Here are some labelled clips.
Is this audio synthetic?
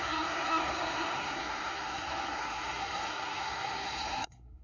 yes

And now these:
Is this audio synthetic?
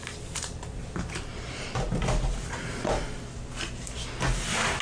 no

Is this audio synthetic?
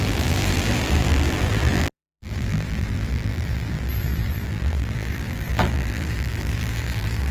yes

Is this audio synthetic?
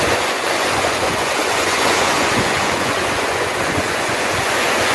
yes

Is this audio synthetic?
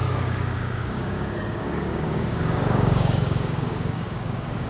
yes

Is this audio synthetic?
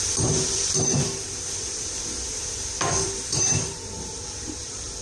yes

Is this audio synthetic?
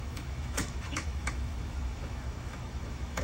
yes